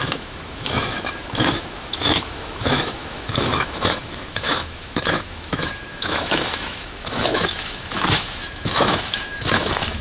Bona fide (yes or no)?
no